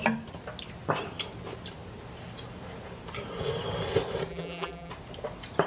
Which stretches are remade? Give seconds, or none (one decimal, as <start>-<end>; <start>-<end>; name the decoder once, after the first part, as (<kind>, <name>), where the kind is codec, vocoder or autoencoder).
4.3-4.9 (vocoder, BigVGAN v2)